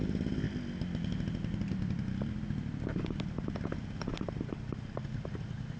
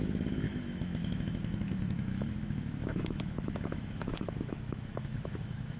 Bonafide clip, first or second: first